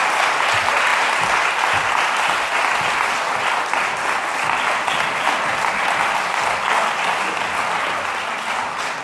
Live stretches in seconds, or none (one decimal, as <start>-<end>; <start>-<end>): 0.0-9.0